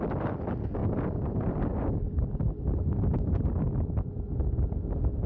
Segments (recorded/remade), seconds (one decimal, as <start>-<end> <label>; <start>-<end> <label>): 0.0-5.3 recorded